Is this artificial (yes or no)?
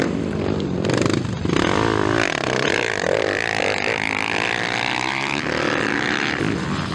yes